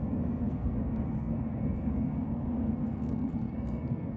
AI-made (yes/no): yes